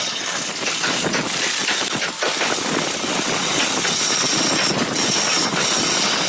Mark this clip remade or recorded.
recorded